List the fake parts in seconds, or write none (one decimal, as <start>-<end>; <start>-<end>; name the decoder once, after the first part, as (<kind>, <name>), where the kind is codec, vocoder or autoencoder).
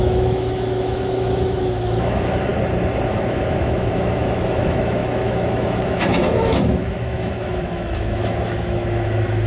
0.0-2.5 (autoencoder, DAC-VAE); 3.1-9.5